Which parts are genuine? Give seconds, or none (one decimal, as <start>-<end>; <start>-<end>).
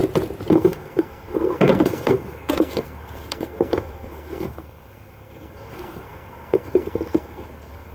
0.0-0.5